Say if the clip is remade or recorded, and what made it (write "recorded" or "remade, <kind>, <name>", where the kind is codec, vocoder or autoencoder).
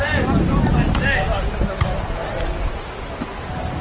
recorded